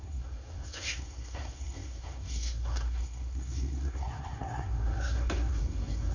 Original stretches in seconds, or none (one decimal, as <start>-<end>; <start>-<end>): none